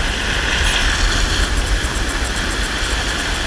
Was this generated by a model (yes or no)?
no